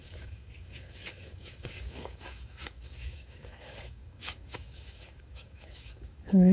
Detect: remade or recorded remade